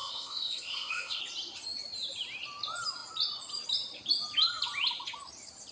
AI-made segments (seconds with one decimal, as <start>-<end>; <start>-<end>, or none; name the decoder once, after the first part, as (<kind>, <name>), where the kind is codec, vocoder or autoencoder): 0.0-1.2 (codec, ZipCodec)